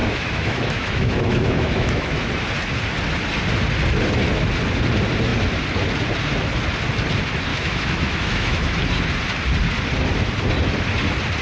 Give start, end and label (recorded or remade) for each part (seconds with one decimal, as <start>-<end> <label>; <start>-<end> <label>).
0.0-2.3 remade; 2.3-7.5 recorded; 7.5-8.7 remade; 8.7-11.4 recorded